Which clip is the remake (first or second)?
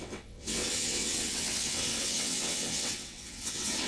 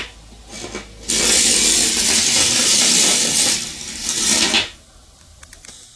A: first